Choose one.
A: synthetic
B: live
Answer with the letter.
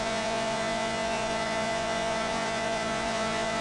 A